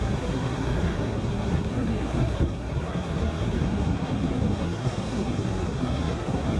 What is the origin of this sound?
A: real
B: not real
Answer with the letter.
B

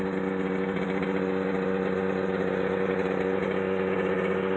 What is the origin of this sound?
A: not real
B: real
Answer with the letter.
B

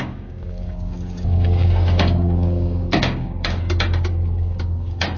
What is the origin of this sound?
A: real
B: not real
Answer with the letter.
B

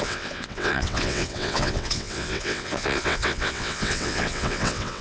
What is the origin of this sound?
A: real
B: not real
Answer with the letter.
B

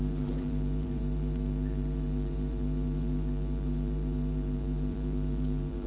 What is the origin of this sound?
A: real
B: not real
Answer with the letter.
B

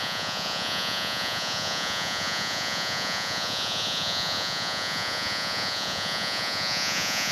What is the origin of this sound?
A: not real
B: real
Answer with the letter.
A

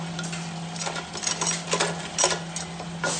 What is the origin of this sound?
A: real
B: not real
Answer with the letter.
A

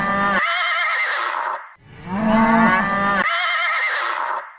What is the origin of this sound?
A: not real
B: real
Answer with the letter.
B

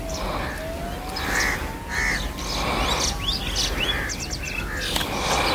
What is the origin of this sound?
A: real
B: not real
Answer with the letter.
A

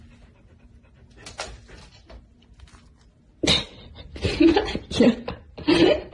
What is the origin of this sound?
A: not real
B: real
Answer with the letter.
B